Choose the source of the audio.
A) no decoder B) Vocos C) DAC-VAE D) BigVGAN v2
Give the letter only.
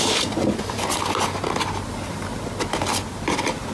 A